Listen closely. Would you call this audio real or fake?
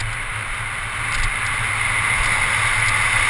real